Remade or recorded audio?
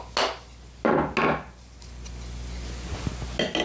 recorded